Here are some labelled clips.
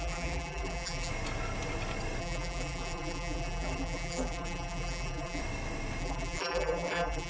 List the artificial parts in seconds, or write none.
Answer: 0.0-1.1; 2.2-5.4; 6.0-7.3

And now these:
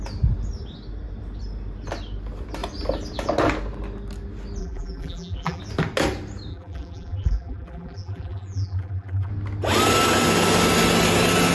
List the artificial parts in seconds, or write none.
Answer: 4.6-5.6; 6.5-9.3

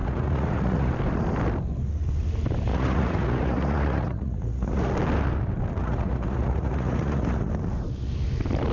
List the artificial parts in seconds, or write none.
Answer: 0.0-0.9; 2.7-4.9; 5.8-7.5

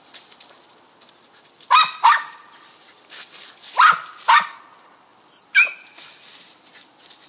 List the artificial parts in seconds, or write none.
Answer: none